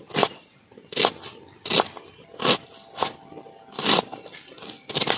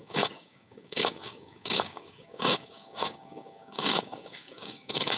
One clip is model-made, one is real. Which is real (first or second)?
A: first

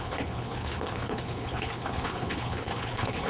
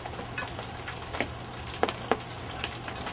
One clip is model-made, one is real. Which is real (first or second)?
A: second